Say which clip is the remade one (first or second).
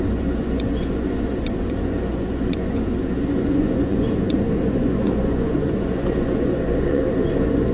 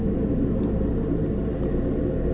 first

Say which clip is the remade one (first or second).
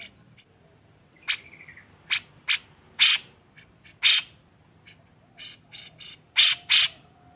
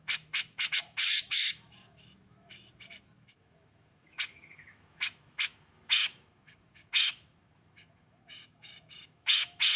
second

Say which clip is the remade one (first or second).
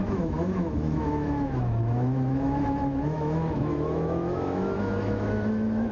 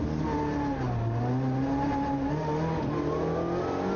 first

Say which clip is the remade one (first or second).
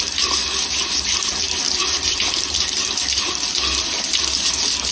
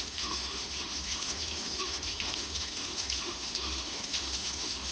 second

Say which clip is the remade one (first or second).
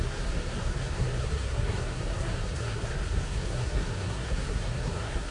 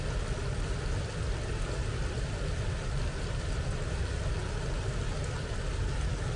first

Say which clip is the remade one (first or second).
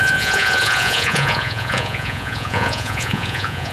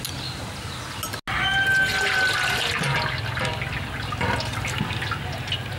first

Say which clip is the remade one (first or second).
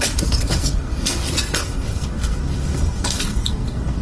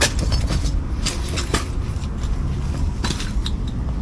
first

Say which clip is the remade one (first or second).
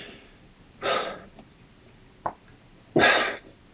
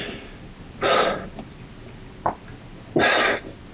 first